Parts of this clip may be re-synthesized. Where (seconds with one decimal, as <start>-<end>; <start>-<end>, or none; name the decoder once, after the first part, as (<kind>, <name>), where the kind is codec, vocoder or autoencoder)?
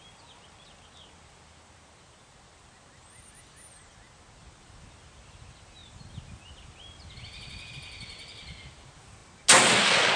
none